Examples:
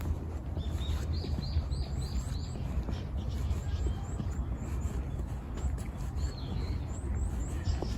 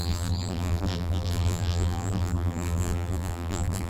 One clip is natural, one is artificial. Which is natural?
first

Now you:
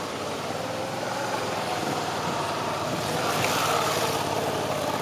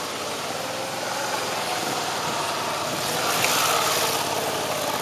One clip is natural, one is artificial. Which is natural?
second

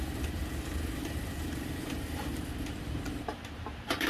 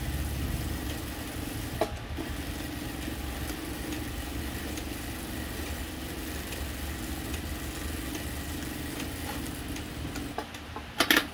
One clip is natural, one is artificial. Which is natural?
second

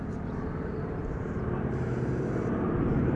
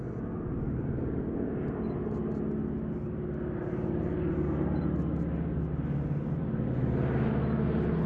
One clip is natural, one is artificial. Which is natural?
second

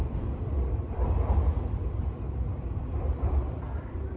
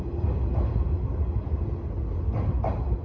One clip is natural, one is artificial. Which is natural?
second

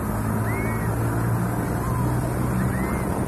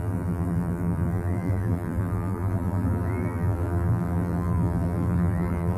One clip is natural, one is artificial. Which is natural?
first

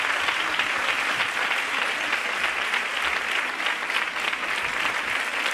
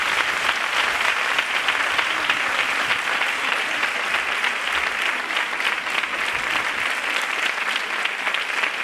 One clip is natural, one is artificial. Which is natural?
first